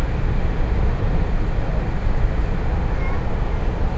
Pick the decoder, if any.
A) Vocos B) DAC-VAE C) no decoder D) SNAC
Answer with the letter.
C